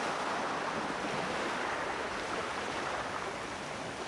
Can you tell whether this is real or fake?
real